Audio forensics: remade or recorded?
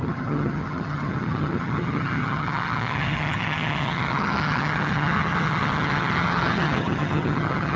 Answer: remade